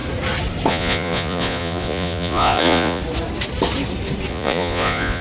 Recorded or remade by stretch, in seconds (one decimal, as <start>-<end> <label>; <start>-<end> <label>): 0.0-0.7 recorded; 0.7-3.0 remade; 3.0-4.3 recorded; 4.3-5.2 remade